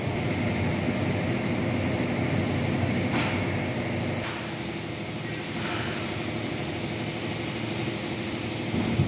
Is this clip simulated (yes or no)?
no